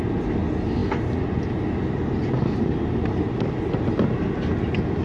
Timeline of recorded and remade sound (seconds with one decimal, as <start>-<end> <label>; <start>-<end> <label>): 0.0-0.8 recorded; 0.8-1.4 remade; 1.4-5.0 recorded